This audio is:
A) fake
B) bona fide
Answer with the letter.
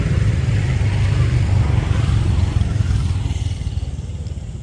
B